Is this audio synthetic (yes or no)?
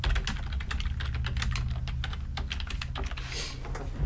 no